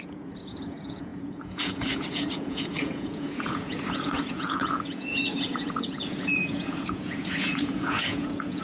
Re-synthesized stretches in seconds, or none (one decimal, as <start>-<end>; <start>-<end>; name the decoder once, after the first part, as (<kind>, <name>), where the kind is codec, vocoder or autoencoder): 0.0-8.6 (vocoder, Vocos)